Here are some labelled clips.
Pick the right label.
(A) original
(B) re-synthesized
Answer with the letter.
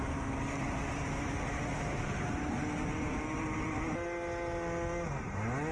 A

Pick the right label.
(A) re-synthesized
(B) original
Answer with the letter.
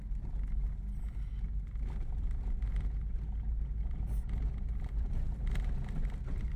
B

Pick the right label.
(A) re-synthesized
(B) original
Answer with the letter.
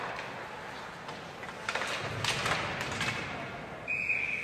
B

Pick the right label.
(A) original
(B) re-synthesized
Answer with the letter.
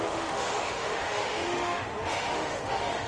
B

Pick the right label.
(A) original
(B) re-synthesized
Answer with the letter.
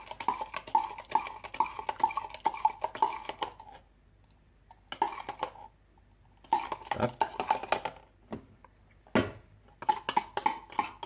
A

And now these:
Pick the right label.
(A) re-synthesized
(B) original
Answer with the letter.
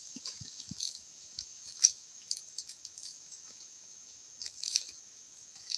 A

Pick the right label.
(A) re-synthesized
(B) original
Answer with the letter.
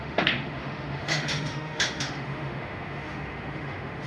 A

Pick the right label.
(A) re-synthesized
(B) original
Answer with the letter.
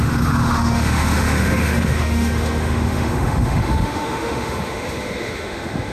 A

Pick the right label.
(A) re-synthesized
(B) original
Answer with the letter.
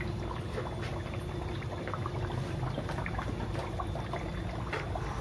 B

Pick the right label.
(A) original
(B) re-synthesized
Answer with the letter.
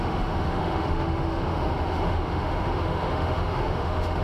B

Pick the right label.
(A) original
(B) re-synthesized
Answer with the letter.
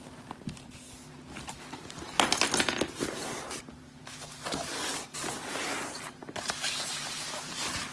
A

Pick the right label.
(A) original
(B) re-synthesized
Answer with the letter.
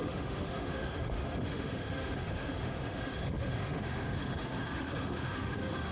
B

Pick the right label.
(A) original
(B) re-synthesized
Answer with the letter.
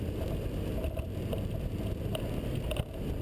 A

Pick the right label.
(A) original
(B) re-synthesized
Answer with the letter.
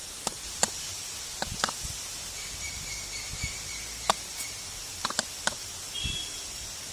A